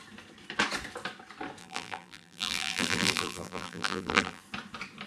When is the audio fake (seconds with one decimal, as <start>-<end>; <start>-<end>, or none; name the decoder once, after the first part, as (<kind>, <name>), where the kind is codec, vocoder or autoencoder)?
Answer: 1.6-4.4 (vocoder, BigVGAN v2)